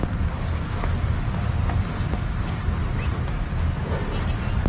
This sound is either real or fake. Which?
real